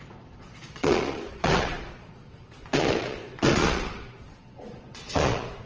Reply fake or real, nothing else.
fake